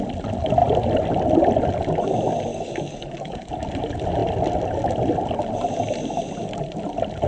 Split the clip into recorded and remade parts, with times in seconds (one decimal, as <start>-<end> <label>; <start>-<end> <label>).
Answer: 0.0-2.5 recorded; 2.5-3.5 remade; 3.5-7.3 recorded